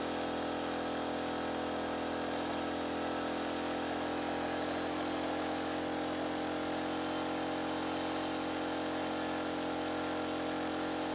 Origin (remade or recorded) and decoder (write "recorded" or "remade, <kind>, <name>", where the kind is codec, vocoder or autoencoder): recorded